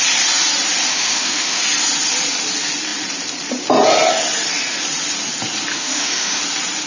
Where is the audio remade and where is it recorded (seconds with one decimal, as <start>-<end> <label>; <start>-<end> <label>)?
0.0-0.9 recorded; 0.9-1.6 remade; 1.6-5.7 recorded; 5.7-6.4 remade; 6.4-6.9 recorded